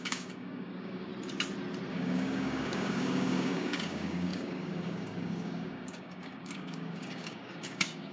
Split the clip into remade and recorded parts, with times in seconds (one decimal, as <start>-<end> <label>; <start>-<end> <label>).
0.0-1.1 remade; 1.1-1.9 recorded; 1.9-8.1 remade